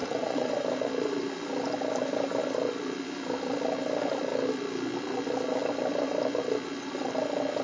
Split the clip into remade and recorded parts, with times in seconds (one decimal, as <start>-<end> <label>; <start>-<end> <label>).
0.0-0.5 remade; 0.5-7.6 recorded